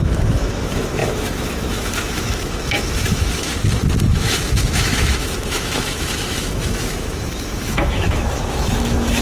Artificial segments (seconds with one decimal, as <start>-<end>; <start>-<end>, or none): 0.0-3.5; 4.1-9.2